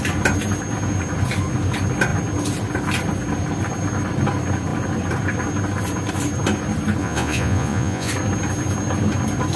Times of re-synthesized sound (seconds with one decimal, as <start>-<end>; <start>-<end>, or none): 7.0-8.1